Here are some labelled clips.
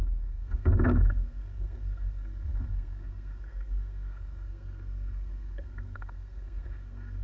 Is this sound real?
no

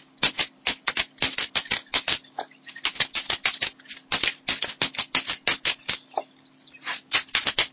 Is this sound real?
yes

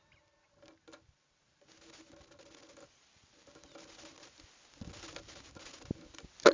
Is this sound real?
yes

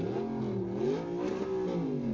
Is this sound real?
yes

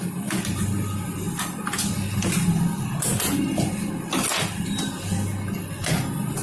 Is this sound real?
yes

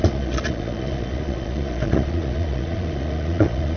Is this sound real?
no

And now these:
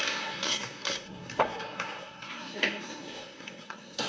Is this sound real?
no